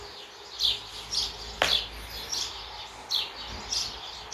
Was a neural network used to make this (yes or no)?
no